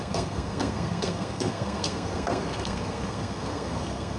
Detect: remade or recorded remade